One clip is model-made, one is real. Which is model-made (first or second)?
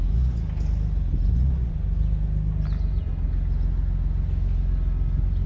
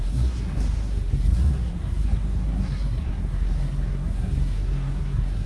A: second